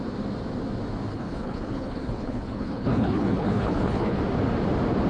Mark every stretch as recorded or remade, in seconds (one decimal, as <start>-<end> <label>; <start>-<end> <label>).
0.0-1.1 recorded; 1.1-4.2 remade; 4.2-5.1 recorded